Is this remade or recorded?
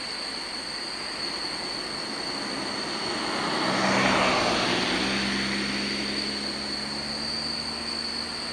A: recorded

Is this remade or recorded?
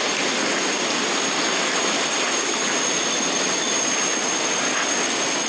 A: recorded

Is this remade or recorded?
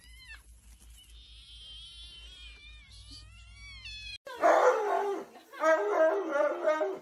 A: recorded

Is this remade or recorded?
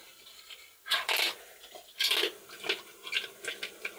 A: recorded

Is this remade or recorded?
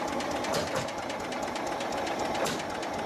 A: recorded